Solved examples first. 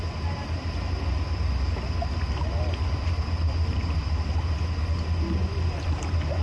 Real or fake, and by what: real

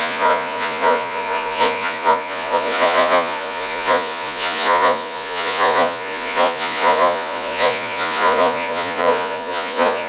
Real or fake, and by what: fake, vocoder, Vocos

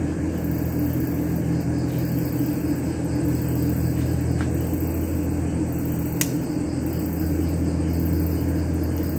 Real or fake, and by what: real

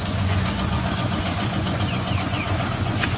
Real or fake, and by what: fake, vocoder, Vocos